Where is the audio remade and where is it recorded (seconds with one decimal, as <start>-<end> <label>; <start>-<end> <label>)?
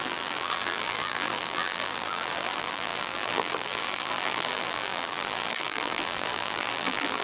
0.0-7.2 remade